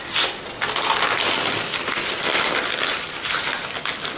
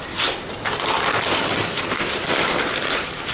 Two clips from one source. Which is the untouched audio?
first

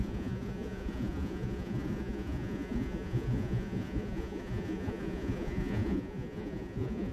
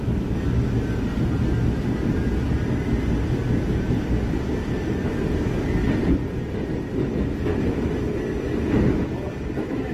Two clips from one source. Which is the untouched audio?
second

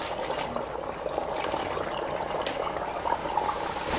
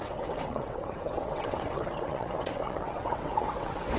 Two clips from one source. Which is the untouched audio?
first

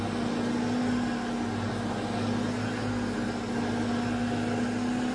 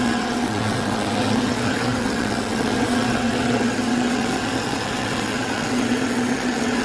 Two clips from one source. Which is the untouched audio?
first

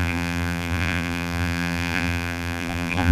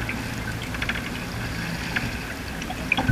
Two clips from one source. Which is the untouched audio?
second